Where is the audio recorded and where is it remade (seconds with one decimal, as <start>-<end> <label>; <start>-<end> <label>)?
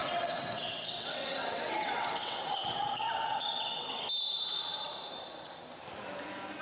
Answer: 0.0-4.0 remade; 4.0-6.6 recorded